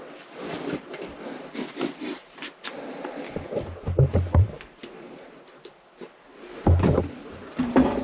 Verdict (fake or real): real